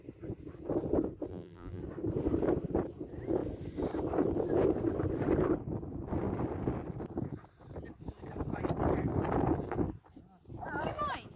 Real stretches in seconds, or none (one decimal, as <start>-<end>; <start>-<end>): 0.0-1.3; 1.8-11.4